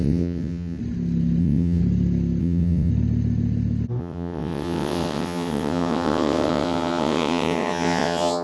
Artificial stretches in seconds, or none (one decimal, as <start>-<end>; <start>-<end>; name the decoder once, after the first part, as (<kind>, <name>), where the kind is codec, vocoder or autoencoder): 0.0-0.8 (vocoder, WaveNeXt); 1.4-1.8; 2.4-2.9; 4.0-8.4